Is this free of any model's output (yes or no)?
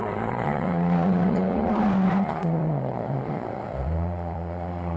no